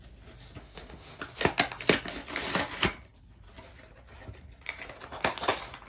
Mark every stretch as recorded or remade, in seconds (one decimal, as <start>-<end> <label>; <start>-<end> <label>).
0.0-0.6 recorded; 0.6-1.2 remade; 1.2-5.9 recorded